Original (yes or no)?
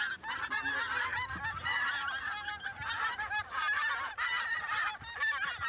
yes